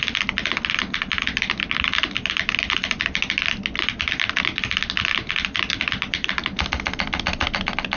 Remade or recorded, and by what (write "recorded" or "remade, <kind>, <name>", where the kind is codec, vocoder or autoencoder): recorded